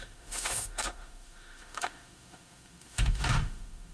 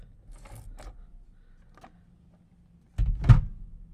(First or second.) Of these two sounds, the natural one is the second